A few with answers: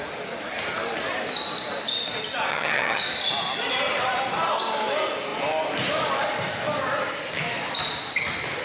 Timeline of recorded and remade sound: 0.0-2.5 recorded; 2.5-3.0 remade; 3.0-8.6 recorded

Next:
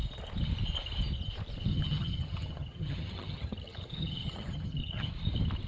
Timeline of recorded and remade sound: 0.0-1.7 recorded; 1.7-5.1 remade; 5.1-5.7 recorded

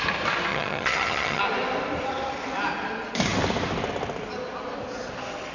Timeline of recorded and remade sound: 0.0-0.5 recorded; 0.5-1.4 remade; 1.4-5.5 recorded

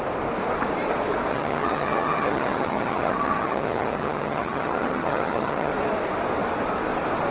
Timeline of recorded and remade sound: 0.0-1.3 recorded; 1.3-5.7 remade; 5.7-7.3 recorded

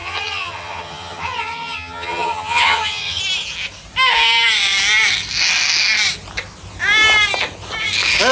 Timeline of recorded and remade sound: 0.0-3.2 remade; 3.2-8.3 recorded

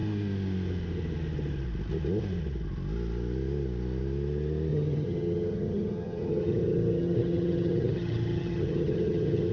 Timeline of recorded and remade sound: 0.0-4.7 recorded; 4.7-9.5 remade